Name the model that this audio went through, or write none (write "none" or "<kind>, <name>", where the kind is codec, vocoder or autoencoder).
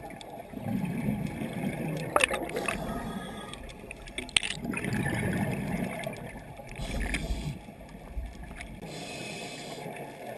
none